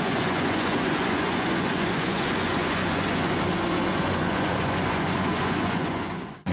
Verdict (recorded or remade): remade